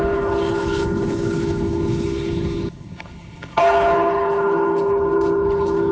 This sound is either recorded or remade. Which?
remade